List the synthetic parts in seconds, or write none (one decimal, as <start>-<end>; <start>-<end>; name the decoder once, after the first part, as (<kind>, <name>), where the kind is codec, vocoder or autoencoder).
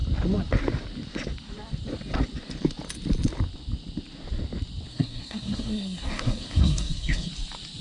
4.9-7.3 (codec, SNAC)